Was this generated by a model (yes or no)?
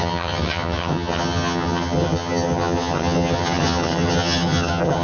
yes